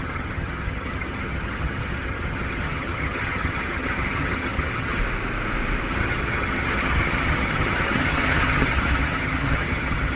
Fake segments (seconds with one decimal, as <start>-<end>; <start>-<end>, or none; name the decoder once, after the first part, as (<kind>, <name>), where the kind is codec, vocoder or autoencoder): 0.0-5.0 (vocoder, HiFi-GAN); 5.9-10.2